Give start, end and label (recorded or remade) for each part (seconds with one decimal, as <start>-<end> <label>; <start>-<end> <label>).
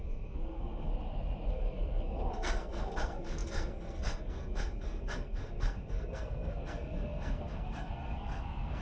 0.0-0.9 remade; 0.9-1.5 recorded; 1.5-8.8 remade